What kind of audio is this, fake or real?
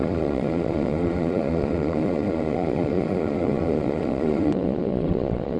fake